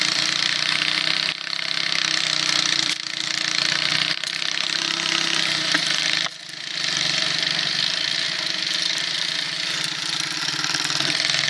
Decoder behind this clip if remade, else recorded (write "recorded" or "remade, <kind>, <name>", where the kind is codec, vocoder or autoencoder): recorded